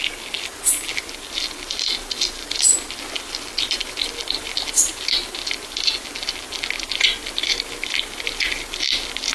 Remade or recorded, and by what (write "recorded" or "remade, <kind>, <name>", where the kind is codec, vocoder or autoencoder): recorded